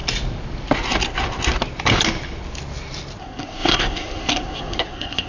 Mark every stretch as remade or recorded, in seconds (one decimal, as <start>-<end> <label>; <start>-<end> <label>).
0.0-3.2 recorded; 3.2-5.3 remade

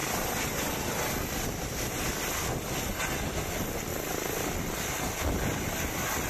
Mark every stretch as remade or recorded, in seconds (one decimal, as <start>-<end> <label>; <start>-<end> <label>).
0.0-6.3 recorded

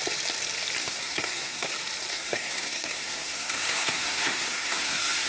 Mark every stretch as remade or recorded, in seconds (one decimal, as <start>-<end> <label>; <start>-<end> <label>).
0.0-0.8 recorded; 0.8-1.7 remade; 1.7-2.1 recorded; 2.1-5.3 remade

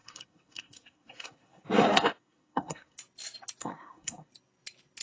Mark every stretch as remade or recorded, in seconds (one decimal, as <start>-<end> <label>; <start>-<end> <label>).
0.0-3.0 remade; 3.0-3.6 recorded; 3.6-4.3 remade; 4.3-5.0 recorded

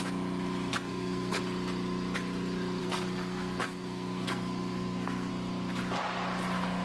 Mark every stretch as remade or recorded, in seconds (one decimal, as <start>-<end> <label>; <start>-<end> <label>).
0.0-0.7 recorded; 0.7-1.4 remade; 1.4-2.8 recorded; 2.8-5.3 remade; 5.3-6.8 recorded

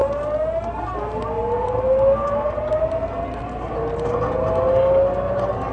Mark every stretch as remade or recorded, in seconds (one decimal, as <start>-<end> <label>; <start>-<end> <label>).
0.0-5.7 recorded